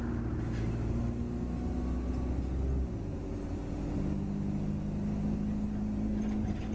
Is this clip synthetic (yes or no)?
no